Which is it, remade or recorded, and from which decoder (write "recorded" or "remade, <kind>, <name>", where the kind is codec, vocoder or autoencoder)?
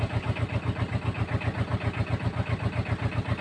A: recorded